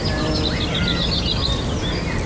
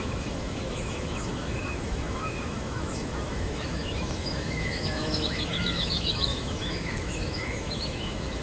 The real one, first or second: first